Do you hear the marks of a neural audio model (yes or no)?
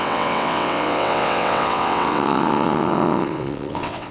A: yes